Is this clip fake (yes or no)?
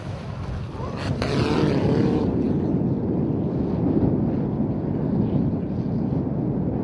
no